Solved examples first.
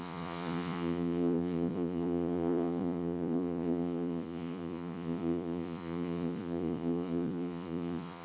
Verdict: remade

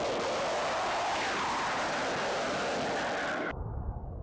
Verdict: recorded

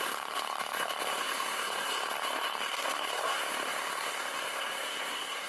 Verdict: remade